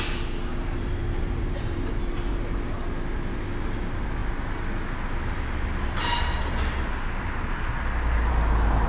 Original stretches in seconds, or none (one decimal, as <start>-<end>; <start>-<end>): 0.0-0.5; 1.9-8.9